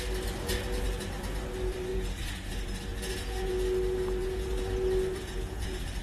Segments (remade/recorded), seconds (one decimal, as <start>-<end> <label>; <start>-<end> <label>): 0.0-1.9 recorded; 1.9-2.5 remade; 2.5-2.9 recorded; 2.9-3.5 remade; 3.5-4.2 recorded; 4.2-6.0 remade